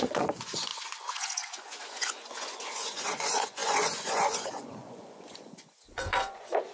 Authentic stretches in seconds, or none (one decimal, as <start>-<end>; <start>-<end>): none